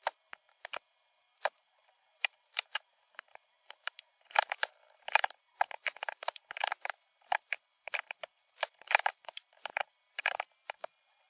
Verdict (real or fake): fake